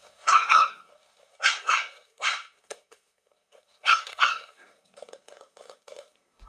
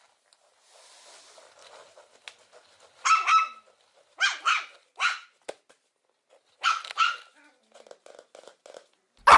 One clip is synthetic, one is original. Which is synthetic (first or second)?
first